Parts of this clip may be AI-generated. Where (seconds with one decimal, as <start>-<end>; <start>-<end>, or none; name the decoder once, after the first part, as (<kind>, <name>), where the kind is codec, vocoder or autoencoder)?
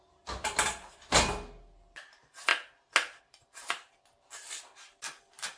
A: 0.0-1.1 (vocoder, BigVGAN v2); 2.0-2.5; 3.2-5.6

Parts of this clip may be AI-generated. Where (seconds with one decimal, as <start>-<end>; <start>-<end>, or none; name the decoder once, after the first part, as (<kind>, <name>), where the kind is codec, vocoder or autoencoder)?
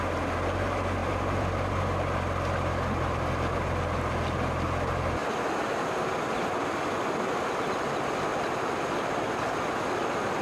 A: 1.0-1.7 (vocoder, BigVGAN v2)